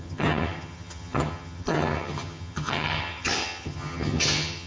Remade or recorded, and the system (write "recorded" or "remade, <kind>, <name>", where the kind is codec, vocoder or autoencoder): remade, vocoder, HiFi-GAN